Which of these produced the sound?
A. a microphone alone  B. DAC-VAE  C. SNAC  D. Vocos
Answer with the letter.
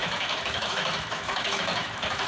B